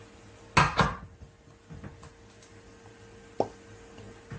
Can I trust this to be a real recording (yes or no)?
yes